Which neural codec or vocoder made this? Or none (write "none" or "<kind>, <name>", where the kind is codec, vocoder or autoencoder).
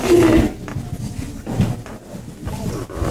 none